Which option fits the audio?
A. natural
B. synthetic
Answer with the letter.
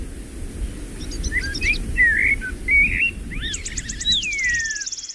A